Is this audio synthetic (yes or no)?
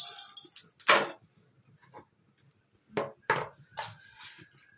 no